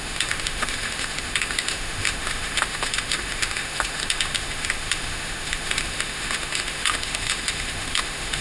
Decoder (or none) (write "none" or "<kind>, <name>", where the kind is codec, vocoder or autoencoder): autoencoder, DAC-VAE